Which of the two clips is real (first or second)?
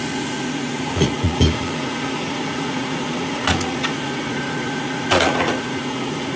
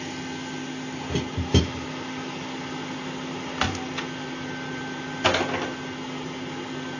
second